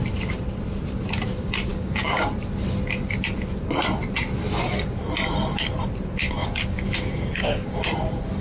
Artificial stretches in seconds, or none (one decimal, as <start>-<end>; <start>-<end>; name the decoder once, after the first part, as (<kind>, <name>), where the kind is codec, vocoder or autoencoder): 1.7-2.3 (codec, DAC); 6.4-7.8